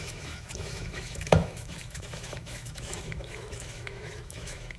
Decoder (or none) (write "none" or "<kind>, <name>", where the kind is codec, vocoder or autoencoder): autoencoder, DAC-VAE